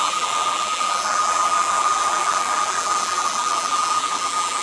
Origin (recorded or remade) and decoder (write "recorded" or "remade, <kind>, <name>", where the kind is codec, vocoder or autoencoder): remade, vocoder, BigVGAN v2